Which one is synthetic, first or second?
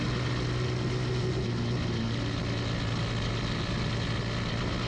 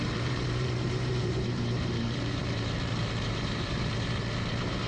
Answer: second